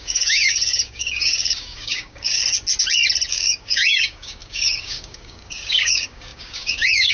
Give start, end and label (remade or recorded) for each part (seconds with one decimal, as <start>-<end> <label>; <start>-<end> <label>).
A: 0.0-2.4 remade; 2.4-3.3 recorded; 3.3-7.1 remade